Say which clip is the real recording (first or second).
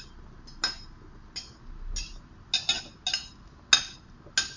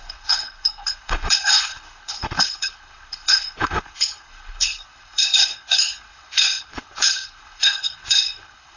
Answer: first